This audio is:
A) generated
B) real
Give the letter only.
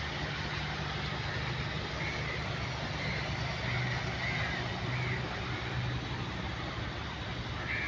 B